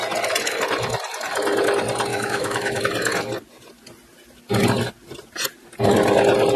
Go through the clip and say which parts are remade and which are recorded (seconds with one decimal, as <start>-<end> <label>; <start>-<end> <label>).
0.0-2.1 recorded; 2.1-2.8 remade; 2.8-6.6 recorded

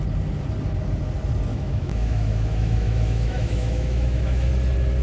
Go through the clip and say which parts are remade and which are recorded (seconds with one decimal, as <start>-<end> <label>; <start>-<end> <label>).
0.0-1.5 recorded; 1.5-4.5 remade; 4.5-5.0 recorded

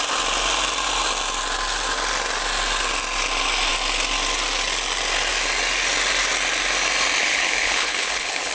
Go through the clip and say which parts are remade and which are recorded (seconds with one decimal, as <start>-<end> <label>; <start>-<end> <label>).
0.0-7.2 recorded; 7.2-8.5 remade

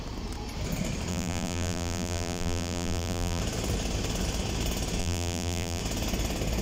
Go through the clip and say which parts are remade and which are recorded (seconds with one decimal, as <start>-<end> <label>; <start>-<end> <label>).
0.0-1.1 recorded; 1.1-3.4 remade; 3.4-5.0 recorded; 5.0-5.8 remade; 5.8-6.6 recorded

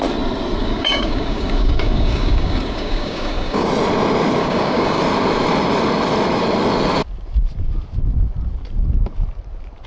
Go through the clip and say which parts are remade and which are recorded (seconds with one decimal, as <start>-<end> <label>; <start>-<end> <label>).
0.0-0.6 recorded; 0.6-3.7 remade; 3.7-4.4 recorded; 4.4-5.0 remade; 5.0-9.9 recorded

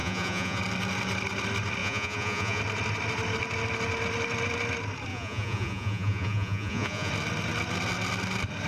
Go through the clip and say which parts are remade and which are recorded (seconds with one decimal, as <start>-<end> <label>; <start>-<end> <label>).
0.0-0.6 remade; 0.6-1.8 recorded; 1.8-2.6 remade; 2.6-5.1 recorded; 5.1-7.1 remade; 7.1-8.7 recorded

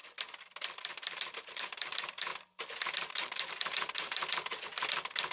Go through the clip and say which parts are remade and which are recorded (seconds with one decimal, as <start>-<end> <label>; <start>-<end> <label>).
0.0-0.8 recorded; 0.8-2.3 remade; 2.3-3.1 recorded; 3.1-4.2 remade; 4.2-5.3 recorded

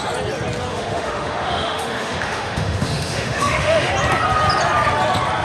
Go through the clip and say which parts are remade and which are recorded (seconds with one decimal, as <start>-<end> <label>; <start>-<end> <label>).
0.0-0.7 recorded; 0.7-3.9 remade; 3.9-5.4 recorded